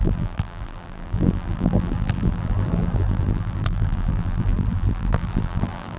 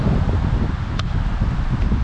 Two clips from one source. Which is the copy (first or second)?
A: first